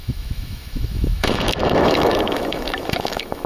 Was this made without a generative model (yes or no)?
no